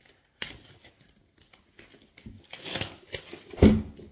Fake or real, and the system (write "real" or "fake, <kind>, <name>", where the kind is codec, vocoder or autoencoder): real